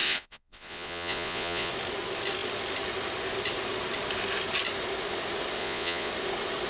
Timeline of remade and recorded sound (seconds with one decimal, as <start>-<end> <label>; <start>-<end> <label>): 0.0-1.7 remade; 1.7-5.6 recorded; 5.6-6.1 remade; 6.1-6.7 recorded